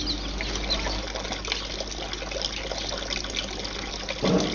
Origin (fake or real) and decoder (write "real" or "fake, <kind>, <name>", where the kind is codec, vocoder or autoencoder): real